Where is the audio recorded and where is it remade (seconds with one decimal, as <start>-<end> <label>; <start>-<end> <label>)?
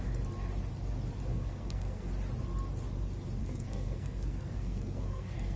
0.0-1.3 recorded; 1.3-2.1 remade; 2.1-3.4 recorded; 3.4-5.6 remade